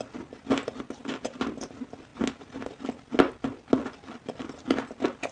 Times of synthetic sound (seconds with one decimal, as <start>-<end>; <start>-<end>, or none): none